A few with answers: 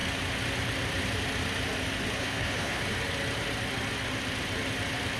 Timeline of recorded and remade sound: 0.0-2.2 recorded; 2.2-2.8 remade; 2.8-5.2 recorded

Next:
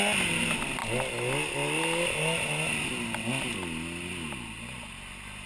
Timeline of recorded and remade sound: 0.0-5.5 recorded

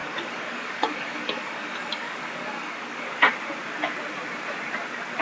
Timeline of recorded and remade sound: 0.0-3.1 remade; 3.1-5.2 recorded

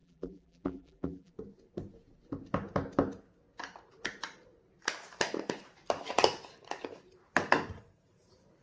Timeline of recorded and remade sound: 0.0-1.3 remade; 1.3-8.6 recorded

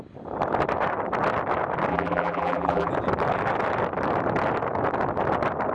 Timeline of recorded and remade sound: 0.0-1.9 recorded; 1.9-2.9 remade; 2.9-5.7 recorded

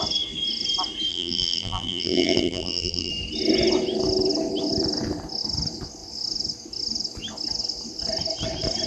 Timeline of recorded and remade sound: 0.0-1.1 recorded; 1.1-3.1 remade; 3.1-8.9 recorded

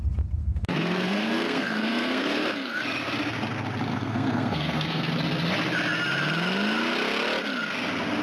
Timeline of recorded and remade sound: 0.0-0.4 recorded; 0.4-2.8 remade; 2.8-3.9 recorded; 3.9-5.1 remade; 5.1-8.2 recorded